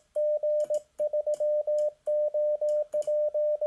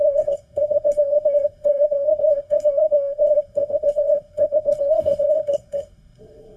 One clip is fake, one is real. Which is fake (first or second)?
second